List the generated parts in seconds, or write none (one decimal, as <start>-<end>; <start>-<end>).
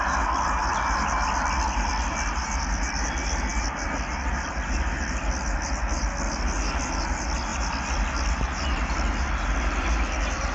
none